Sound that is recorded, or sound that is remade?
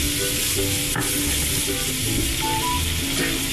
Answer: recorded